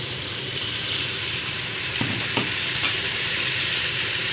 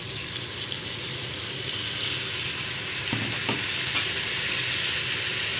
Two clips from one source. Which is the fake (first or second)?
first